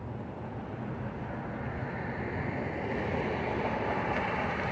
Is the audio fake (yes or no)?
no